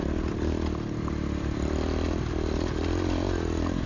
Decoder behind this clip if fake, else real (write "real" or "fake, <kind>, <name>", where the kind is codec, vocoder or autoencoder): real